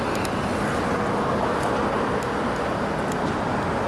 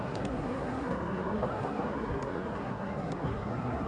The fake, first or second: second